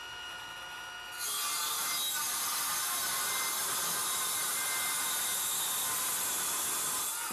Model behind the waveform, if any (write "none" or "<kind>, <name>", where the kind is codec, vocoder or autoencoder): none